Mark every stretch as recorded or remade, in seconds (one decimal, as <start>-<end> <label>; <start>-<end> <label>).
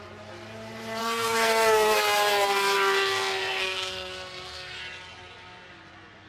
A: 0.0-1.0 recorded; 1.0-4.8 remade; 4.8-6.3 recorded